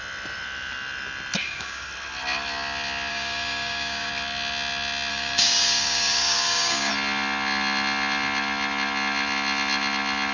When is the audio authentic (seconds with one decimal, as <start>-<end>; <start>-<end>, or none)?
0.0-1.4; 1.9-3.1; 4.1-5.1; 6.9-10.3